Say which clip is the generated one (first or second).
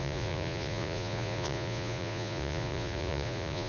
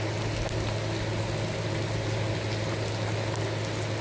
first